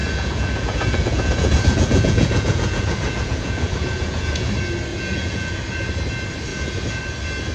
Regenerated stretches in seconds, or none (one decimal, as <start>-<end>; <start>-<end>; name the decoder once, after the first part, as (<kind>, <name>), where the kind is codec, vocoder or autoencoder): 0.0-4.5 (vocoder, Vocos); 4.9-5.6; 6.5-7.0